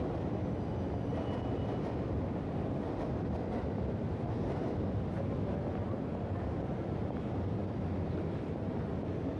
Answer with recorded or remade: recorded